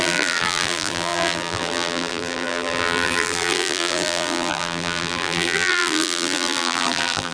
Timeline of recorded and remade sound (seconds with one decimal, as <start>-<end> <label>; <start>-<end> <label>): 0.0-7.3 remade